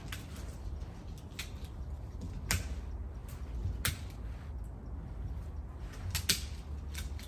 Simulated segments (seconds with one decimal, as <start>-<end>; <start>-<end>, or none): none